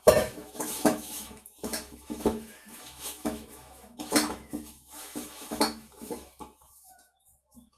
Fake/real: fake